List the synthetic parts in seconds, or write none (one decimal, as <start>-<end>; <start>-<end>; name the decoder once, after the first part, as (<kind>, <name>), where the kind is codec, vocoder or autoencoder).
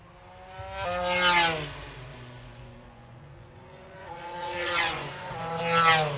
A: 2.1-5.6 (vocoder, Vocos)